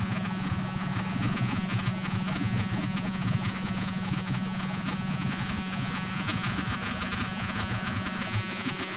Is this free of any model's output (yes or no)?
no